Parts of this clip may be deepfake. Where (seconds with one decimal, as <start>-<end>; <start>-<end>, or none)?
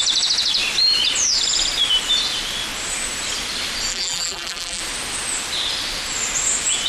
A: 3.9-4.8